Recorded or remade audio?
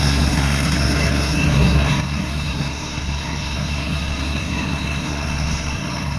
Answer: remade